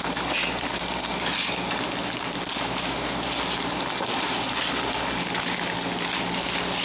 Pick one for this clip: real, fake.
real